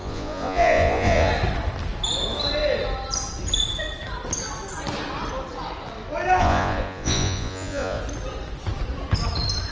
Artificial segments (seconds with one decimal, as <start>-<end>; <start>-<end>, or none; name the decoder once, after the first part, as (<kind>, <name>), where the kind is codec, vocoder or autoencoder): 0.0-1.3 (vocoder, Vocos); 6.4-8.0